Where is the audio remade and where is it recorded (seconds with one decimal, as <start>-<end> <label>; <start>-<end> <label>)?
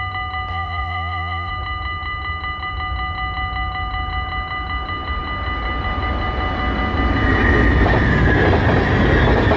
0.0-0.5 recorded; 0.5-1.5 remade; 1.5-9.6 recorded